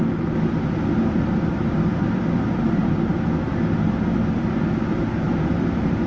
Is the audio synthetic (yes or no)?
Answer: no